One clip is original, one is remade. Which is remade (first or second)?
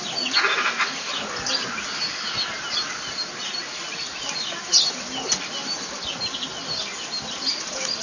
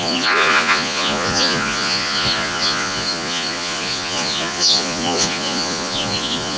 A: second